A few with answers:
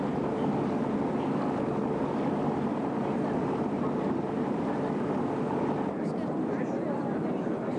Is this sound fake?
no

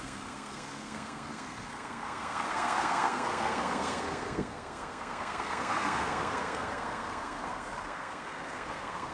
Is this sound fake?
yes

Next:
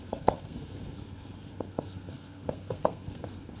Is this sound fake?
yes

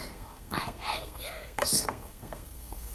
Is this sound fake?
yes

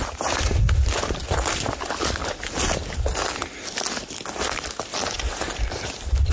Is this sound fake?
no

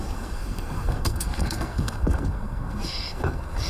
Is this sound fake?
yes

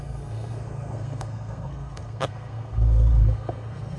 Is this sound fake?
yes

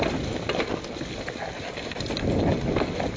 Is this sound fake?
no